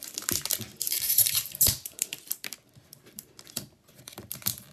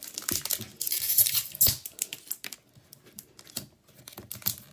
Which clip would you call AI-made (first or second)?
first